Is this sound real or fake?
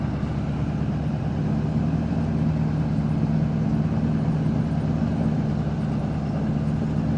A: real